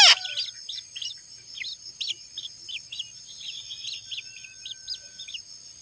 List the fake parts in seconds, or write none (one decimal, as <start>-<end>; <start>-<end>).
none